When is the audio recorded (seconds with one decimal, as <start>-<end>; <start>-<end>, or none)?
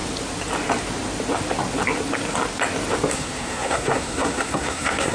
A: 0.0-3.1